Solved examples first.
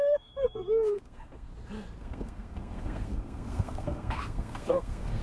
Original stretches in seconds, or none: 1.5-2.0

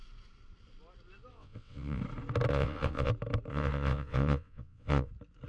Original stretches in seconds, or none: 0.0-1.3; 2.0-2.5; 3.1-3.5; 5.1-5.5

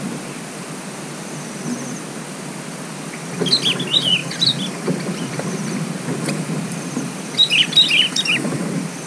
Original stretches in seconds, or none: 0.0-4.2; 8.6-9.1

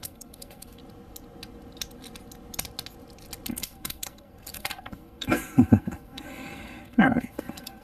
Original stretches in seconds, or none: 0.8-3.5

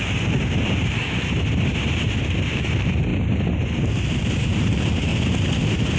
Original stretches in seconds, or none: 1.0-1.7; 3.1-3.9; 5.1-5.6

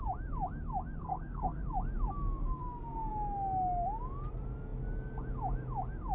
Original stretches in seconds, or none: 0.0-1.0; 1.6-2.4; 3.1-6.1

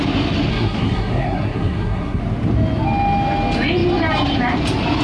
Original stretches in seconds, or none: 0.0-0.5; 2.2-5.0